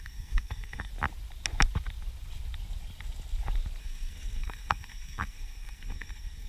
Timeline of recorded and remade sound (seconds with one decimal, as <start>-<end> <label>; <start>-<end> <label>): 0.0-0.9 remade; 0.9-3.8 recorded; 3.8-6.5 remade